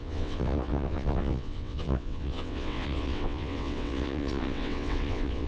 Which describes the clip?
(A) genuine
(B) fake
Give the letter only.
B